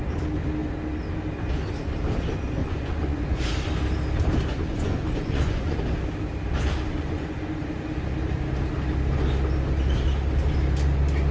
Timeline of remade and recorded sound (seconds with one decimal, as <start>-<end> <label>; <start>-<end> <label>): 0.0-2.6 recorded; 2.6-3.5 remade; 3.5-4.5 recorded; 4.5-5.8 remade; 5.8-6.9 recorded; 6.9-7.7 remade; 7.7-11.3 recorded

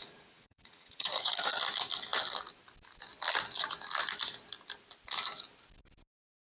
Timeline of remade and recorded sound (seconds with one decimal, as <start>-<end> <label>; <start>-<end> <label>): 0.0-1.6 remade; 1.6-6.5 recorded

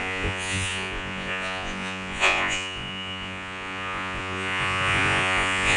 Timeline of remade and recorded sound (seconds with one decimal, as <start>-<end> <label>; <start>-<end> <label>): 0.0-5.8 remade

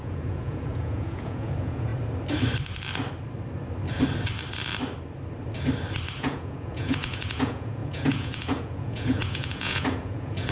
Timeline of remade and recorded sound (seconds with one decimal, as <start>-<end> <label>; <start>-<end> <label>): 0.0-1.9 remade; 1.9-6.2 recorded; 6.2-10.5 remade

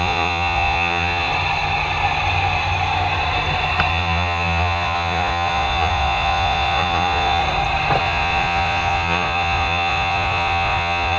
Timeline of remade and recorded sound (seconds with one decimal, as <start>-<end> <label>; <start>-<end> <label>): 0.0-1.3 remade; 1.3-3.9 recorded; 3.9-7.4 remade; 7.4-8.0 recorded; 8.0-11.2 remade

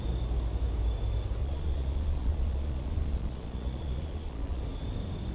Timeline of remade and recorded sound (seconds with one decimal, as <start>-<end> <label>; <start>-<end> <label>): 0.0-1.4 recorded; 1.4-4.6 remade; 4.6-5.3 recorded

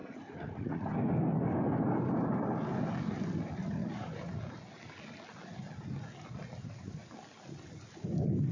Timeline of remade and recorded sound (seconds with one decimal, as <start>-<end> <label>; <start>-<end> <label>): 0.0-0.9 remade; 0.9-3.8 recorded; 3.8-4.4 remade; 4.4-8.5 recorded

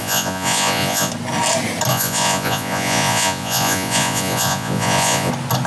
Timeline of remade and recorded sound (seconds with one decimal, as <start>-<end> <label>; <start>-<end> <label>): 0.0-1.1 remade; 1.1-1.9 recorded; 1.9-5.3 remade; 5.3-5.7 recorded